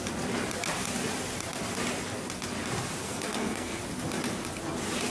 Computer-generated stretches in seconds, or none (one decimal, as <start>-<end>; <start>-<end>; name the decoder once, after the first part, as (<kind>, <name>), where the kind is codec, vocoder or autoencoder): 3.0-3.8 (codec, SNAC)